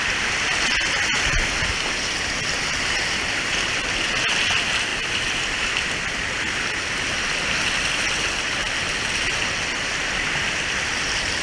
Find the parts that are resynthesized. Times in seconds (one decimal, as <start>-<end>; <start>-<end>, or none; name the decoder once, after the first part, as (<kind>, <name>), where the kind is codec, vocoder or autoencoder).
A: none

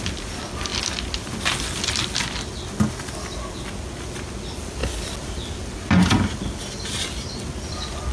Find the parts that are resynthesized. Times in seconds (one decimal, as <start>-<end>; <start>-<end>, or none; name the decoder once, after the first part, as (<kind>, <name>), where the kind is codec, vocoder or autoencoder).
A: none

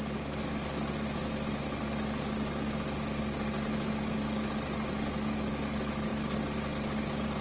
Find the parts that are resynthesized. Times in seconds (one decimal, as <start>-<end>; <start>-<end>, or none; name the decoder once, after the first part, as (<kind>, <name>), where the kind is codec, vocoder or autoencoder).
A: none

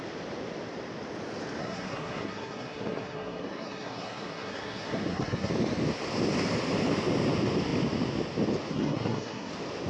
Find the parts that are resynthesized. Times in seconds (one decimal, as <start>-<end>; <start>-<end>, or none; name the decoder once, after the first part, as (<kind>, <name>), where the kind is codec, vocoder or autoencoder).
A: 1.6-5.5 (codec, SNAC); 8.7-9.5

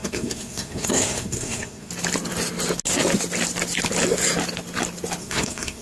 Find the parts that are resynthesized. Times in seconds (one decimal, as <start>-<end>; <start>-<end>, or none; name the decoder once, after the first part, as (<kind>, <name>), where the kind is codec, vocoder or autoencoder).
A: 0.0-1.9 (codec, SNAC); 5.2-5.8

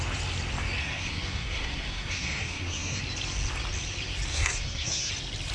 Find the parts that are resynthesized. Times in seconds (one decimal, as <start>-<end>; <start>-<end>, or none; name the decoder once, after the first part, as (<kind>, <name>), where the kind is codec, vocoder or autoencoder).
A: 0.8-3.0 (codec, SNAC); 4.3-5.1

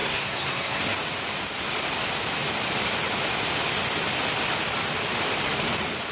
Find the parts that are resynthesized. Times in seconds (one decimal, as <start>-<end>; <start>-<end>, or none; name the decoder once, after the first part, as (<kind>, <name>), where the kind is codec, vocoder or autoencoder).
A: 0.0-0.8 (codec, SNAC)